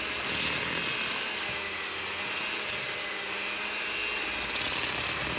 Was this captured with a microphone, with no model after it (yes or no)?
yes